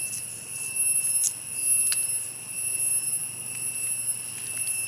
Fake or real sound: real